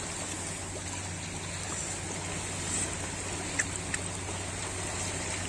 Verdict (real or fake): real